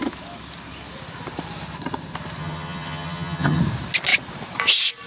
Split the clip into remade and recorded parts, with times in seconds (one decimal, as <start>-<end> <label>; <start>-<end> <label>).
0.0-2.4 recorded; 2.4-3.6 remade; 3.6-5.1 recorded